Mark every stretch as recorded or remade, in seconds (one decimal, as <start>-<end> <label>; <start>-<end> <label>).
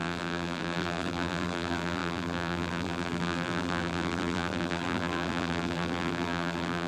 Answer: 0.0-6.9 remade